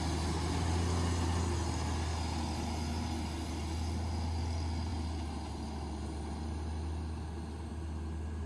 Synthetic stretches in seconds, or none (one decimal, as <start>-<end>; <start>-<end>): none